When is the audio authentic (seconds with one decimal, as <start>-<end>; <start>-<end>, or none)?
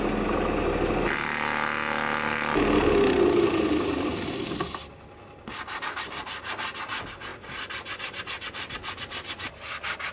0.0-10.1